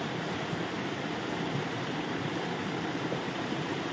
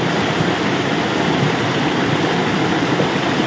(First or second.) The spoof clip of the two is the first